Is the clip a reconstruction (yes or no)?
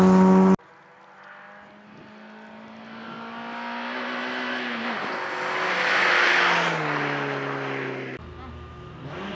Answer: no